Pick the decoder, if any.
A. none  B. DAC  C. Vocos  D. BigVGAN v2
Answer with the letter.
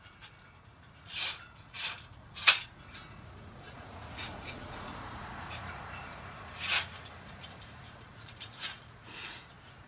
C